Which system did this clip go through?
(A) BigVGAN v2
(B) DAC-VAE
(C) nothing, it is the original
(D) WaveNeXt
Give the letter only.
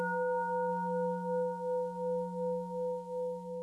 B